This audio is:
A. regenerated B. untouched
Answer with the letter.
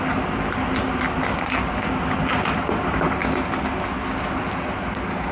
B